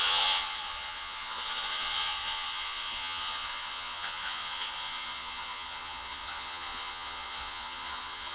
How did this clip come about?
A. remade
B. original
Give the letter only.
A